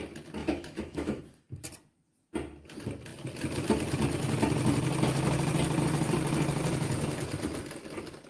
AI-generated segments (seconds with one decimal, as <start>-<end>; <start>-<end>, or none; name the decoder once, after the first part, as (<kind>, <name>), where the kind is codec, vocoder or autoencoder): 0.4-1.2 (autoencoder, DAC-VAE)